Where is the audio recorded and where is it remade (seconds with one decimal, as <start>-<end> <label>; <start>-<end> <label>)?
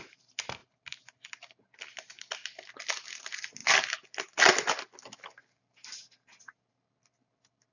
0.0-7.7 recorded